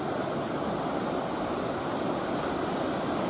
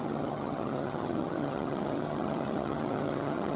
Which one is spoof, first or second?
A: second